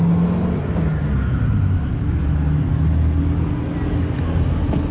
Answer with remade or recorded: recorded